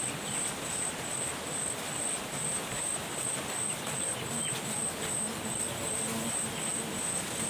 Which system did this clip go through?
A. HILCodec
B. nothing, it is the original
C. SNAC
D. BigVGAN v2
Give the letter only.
B